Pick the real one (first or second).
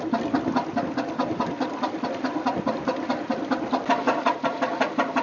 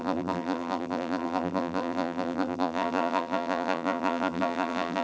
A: first